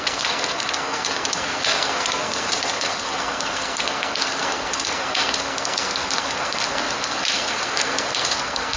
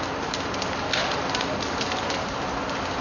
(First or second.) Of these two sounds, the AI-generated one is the first